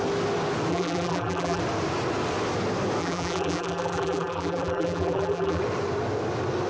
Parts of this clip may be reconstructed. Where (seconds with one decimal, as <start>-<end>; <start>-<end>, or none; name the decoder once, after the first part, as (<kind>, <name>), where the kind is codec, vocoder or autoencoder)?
0.7-1.6 (vocoder, BigVGAN v2); 3.0-5.6